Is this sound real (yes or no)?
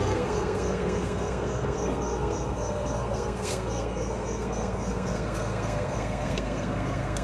no